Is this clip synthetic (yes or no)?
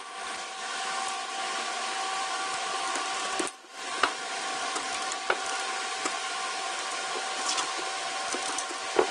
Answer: yes